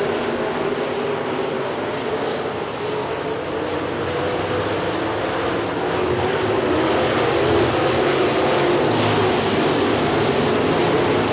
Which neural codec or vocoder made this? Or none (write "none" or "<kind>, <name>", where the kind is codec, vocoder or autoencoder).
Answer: none